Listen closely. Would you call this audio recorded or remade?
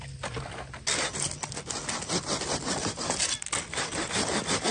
recorded